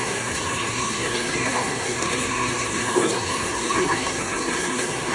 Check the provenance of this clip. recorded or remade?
remade